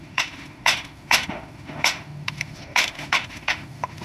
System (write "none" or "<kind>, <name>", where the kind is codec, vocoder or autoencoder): autoencoder, DAC-VAE